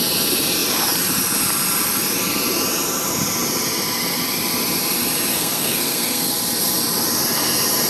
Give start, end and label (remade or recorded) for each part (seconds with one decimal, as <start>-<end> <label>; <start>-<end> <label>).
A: 0.0-5.3 recorded; 5.3-6.3 remade; 6.3-7.9 recorded

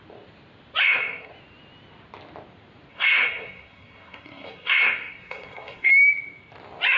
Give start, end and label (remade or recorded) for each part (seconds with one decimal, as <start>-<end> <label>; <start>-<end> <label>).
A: 0.0-0.8 recorded; 0.8-1.3 remade; 1.3-2.9 recorded; 2.9-5.9 remade; 5.9-7.0 recorded